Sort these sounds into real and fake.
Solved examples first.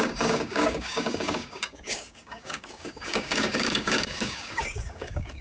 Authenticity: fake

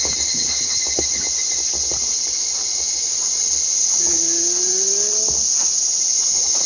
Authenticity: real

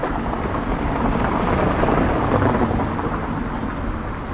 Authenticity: real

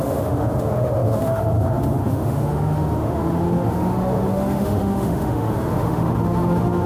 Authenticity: fake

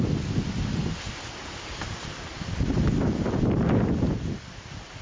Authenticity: real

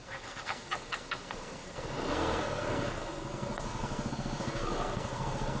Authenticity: fake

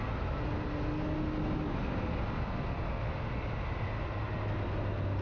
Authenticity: real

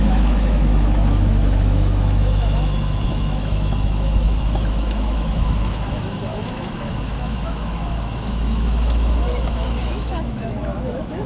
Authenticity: fake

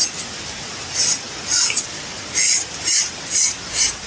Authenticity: real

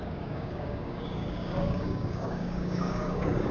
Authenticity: fake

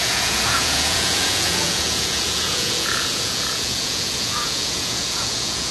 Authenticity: fake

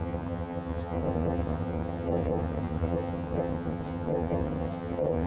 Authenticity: fake